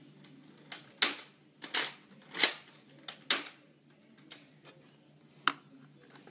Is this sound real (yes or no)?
yes